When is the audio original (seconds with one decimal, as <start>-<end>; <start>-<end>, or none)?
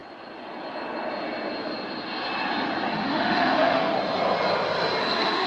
0.0-2.9; 3.9-5.0